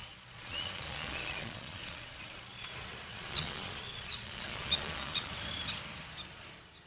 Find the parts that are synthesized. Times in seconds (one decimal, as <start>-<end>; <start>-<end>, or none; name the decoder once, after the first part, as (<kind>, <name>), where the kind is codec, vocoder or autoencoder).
0.0-2.7 (vocoder, Vocos); 3.1-5.3

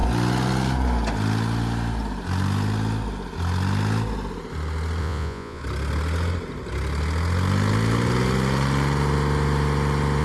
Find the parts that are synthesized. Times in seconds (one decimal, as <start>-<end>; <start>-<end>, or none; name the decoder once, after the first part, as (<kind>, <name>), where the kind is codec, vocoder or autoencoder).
5.0-5.6 (vocoder, Vocos)

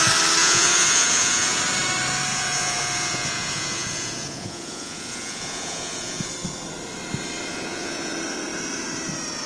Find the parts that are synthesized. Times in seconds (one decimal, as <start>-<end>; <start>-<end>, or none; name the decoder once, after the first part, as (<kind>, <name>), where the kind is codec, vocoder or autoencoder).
0.4-1.6 (vocoder, Vocos); 2.3-6.3; 7.5-8.1

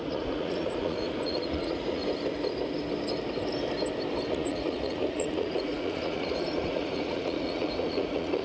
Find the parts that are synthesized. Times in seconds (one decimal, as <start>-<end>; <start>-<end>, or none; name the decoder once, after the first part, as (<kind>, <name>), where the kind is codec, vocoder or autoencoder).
0.0-2.0 (vocoder, Vocos); 4.3-8.4

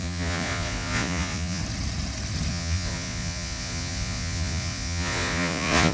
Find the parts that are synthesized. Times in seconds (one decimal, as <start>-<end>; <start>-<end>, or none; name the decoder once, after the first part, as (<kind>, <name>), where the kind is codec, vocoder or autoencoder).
0.0-1.6 (vocoder, Vocos); 2.5-5.9

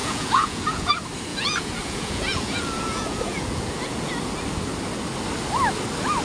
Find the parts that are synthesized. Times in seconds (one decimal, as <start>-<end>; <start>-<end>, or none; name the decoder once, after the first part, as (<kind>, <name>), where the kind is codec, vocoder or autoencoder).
0.0-0.9 (vocoder, Vocos); 1.3-4.1

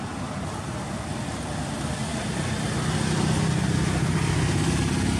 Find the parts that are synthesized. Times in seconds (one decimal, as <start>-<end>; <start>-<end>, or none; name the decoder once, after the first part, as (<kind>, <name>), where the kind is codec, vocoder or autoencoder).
none

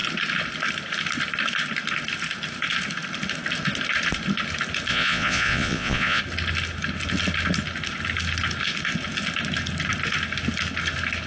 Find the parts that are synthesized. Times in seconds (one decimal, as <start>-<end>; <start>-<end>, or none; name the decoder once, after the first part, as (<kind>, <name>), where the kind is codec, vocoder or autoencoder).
4.9-6.2 (vocoder, Vocos)